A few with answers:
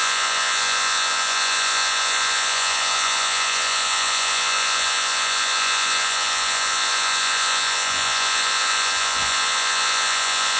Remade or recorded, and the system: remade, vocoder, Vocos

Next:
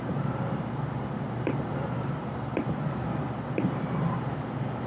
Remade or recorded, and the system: remade, vocoder, BigVGAN v2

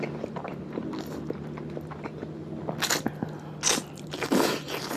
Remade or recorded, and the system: recorded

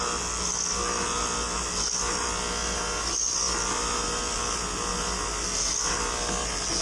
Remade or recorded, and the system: recorded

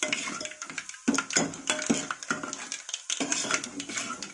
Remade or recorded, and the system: recorded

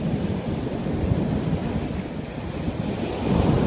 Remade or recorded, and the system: recorded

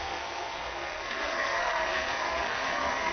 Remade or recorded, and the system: remade, codec, SNAC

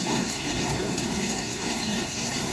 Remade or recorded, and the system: remade, codec, SNAC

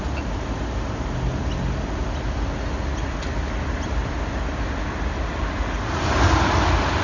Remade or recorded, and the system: recorded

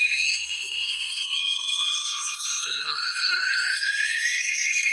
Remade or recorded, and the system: remade, codec, SNAC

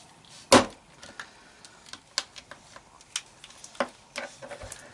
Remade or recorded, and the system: recorded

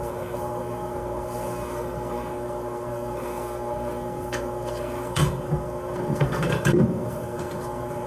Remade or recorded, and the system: remade, codec, SNAC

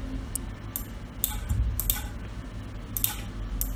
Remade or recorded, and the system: recorded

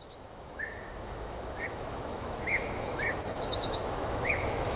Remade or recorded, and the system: remade, autoencoder, DAC-VAE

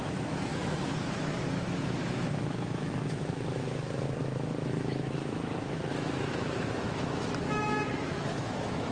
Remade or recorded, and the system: remade, autoencoder, DAC-VAE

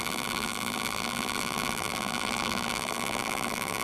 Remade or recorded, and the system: remade, vocoder, BigVGAN v2